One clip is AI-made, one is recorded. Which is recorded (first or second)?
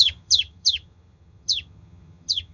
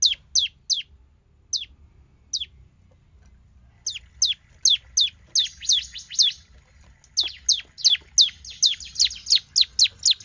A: second